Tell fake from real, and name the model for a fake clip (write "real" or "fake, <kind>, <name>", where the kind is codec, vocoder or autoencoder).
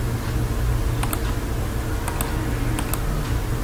real